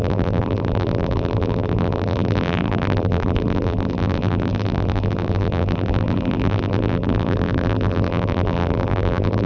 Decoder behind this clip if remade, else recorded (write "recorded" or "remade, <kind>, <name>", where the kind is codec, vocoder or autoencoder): remade, vocoder, BigVGAN v2